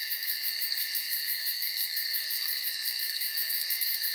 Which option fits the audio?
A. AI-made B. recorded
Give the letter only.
A